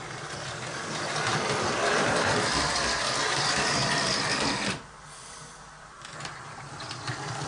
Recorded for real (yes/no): no